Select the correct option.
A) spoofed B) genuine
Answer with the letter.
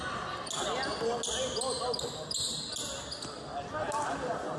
B